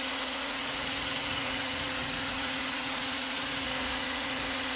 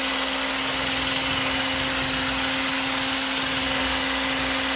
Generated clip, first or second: first